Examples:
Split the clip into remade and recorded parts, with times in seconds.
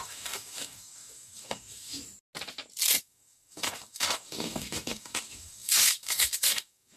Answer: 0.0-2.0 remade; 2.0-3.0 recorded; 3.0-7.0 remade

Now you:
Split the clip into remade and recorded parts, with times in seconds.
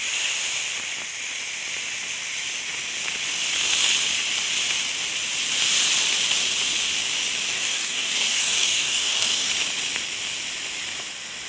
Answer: 0.0-7.5 recorded; 7.5-9.5 remade; 9.5-11.5 recorded